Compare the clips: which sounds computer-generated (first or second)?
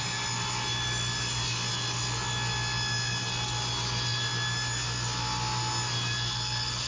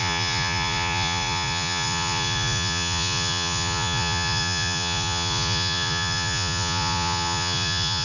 second